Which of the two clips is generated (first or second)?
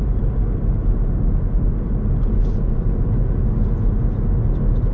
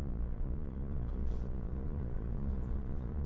second